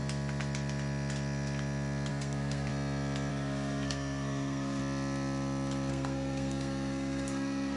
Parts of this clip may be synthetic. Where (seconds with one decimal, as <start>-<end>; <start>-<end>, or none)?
2.1-2.7; 3.3-4.8; 5.9-7.8

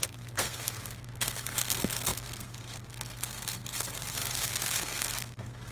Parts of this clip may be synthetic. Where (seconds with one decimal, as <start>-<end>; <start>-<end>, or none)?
0.0-5.7

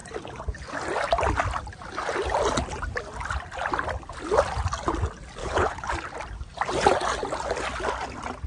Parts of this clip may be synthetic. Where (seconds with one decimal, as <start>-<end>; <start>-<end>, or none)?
5.4-5.9

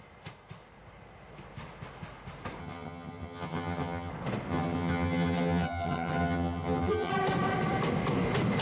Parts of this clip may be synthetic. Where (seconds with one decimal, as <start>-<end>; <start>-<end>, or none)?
2.6-4.1; 4.5-7.1